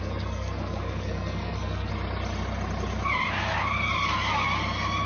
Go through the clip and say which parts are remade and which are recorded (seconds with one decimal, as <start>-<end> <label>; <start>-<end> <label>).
0.0-1.9 remade; 1.9-5.1 recorded